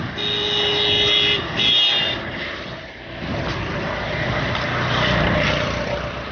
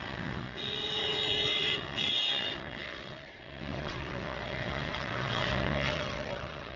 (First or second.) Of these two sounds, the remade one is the second